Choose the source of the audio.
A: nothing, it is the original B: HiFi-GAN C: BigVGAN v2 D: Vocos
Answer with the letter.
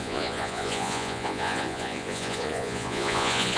D